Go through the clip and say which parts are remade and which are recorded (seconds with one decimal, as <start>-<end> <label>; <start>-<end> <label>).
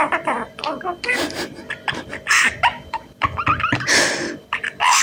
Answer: 0.0-5.0 recorded